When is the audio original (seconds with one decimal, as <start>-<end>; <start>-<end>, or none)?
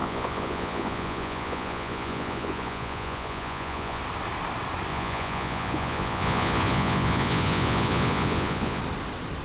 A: 4.0-4.9; 8.8-9.4